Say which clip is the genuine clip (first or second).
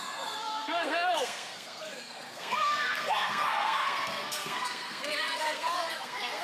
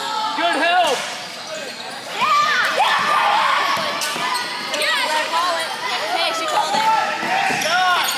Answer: second